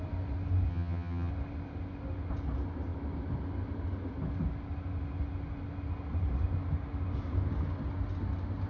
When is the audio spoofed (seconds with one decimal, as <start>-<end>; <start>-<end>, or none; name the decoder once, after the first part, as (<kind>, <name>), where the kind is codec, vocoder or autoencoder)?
0.7-1.3 (vocoder, HiFi-GAN)